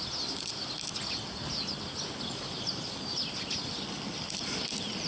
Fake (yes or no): no